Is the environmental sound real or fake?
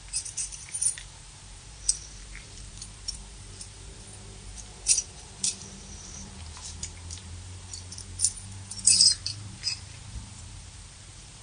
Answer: fake